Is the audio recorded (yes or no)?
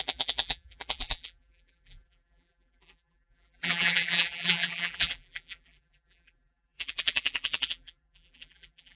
no